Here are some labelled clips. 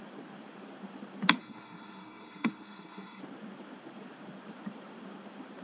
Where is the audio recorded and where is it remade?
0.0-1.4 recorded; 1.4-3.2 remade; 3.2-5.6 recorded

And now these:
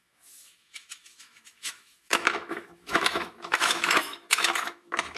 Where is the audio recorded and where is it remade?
0.0-5.2 remade

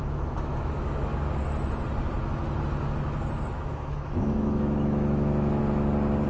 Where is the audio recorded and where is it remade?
0.0-1.1 remade; 1.1-3.5 recorded; 3.5-5.6 remade; 5.6-6.3 recorded